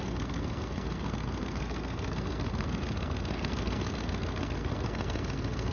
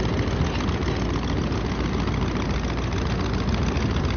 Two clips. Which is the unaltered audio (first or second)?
second